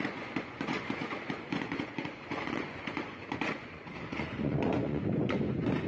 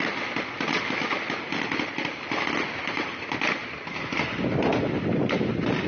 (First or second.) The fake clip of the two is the first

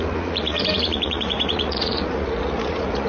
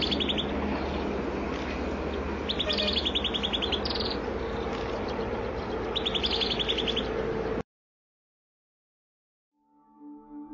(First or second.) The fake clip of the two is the first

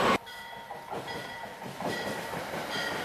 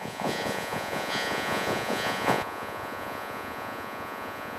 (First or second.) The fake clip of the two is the second